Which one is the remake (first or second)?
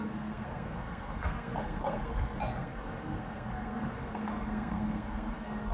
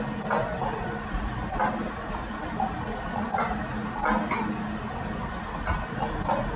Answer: first